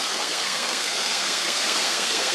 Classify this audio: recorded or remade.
remade